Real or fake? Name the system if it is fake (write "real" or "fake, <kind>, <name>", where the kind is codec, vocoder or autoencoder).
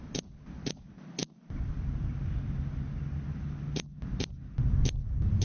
real